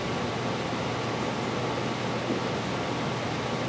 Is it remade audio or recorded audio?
recorded